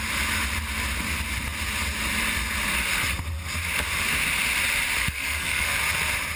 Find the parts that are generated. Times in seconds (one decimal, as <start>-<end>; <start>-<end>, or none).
5.0-5.7